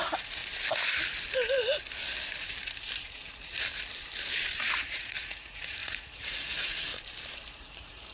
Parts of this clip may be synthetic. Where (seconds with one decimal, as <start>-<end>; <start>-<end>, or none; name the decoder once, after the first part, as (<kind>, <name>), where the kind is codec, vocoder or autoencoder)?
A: 0.0-0.4 (vocoder, Vocos); 4.7-6.9; 7.5-8.1